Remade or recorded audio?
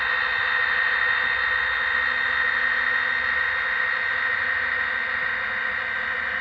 recorded